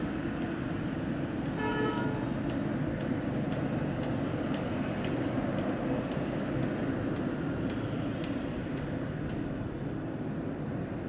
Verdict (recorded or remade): recorded